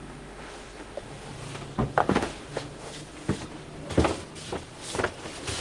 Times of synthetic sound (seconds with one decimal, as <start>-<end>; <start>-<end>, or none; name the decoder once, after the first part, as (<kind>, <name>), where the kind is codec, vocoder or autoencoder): 0.0-1.3 (autoencoder, DAC-VAE); 2.0-2.9